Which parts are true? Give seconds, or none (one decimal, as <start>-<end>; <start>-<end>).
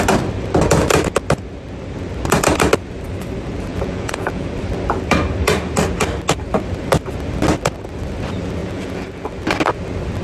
0.0-3.7; 4.5-8.6; 9.3-10.2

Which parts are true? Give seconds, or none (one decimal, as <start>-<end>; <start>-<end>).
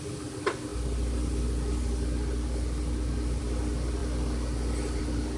0.0-5.4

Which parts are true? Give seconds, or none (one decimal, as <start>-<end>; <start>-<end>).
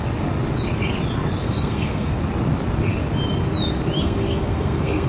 0.0-1.4; 2.2-4.0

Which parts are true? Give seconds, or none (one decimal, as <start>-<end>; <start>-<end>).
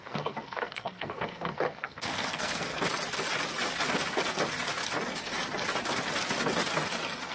2.7-7.3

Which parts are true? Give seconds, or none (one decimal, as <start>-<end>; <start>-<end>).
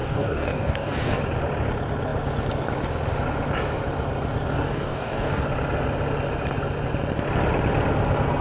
1.2-4.5; 5.4-8.4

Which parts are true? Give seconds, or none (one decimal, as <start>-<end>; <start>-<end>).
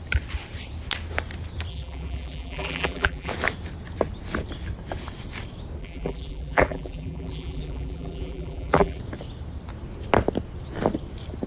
0.0-1.7; 3.3-5.8; 9.0-11.5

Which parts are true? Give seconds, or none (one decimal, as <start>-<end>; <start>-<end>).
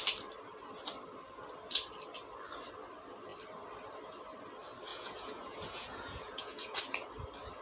0.0-4.9; 6.8-7.6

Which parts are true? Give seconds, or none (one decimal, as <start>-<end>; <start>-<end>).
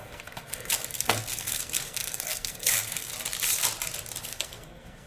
3.1-4.2